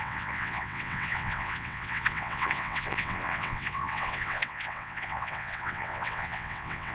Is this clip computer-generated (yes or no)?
yes